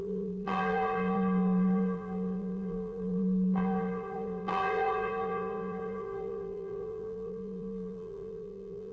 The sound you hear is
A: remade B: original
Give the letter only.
A